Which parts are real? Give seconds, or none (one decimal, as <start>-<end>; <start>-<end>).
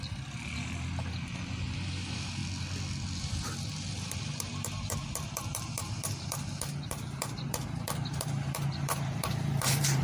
2.4-3.2